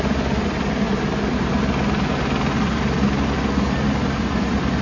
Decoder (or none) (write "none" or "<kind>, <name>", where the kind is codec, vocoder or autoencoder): none